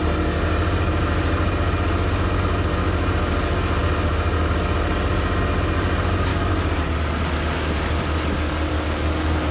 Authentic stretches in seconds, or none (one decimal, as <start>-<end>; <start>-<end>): 0.0-9.5